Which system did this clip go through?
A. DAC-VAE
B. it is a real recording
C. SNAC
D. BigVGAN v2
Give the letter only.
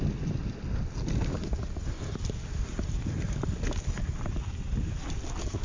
B